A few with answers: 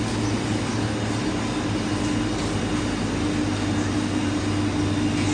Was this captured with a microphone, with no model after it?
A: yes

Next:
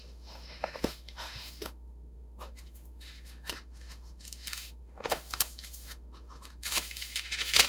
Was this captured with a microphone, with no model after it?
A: no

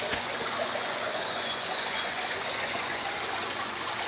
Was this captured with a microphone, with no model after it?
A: no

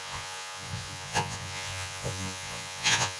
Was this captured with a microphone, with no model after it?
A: no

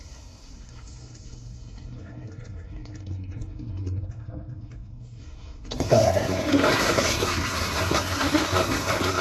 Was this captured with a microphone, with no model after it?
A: no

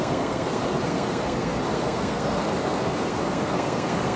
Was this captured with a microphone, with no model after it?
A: no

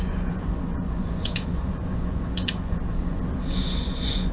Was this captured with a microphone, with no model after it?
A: no